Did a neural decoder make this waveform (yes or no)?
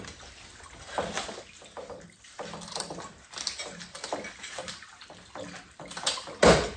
no